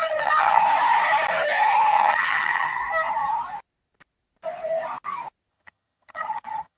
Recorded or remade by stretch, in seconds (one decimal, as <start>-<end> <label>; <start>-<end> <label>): 0.0-0.6 remade; 0.6-1.9 recorded; 1.9-2.8 remade; 2.8-5.5 recorded; 5.5-6.8 remade